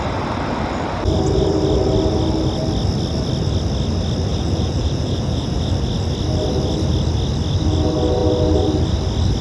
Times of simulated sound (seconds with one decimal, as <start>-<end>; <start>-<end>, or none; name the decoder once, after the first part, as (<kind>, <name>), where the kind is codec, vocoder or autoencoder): 4.3-5.7 (vocoder, Vocos)